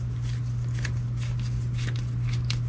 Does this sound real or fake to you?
real